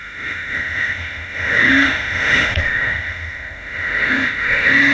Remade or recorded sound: remade